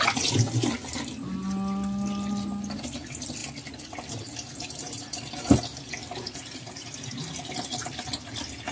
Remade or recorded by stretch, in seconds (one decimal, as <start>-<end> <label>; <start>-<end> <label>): 0.0-6.0 recorded; 6.0-6.7 remade; 6.7-8.7 recorded